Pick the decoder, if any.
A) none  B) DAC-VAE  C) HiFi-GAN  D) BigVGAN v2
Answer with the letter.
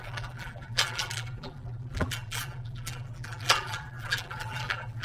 D